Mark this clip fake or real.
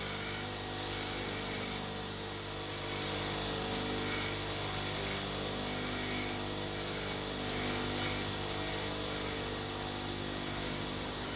real